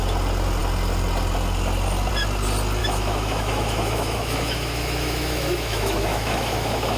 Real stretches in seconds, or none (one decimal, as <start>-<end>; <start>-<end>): 0.0-2.8